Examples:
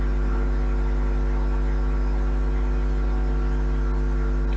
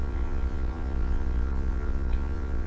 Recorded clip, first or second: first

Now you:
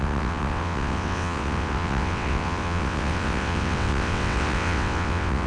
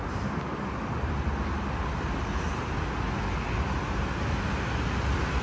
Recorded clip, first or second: second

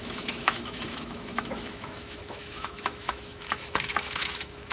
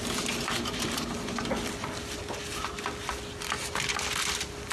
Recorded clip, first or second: second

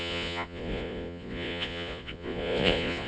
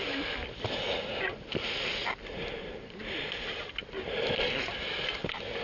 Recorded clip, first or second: second